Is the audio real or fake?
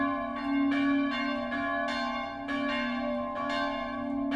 real